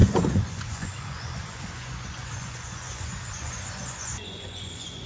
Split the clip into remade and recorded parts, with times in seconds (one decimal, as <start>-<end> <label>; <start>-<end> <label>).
0.0-5.1 remade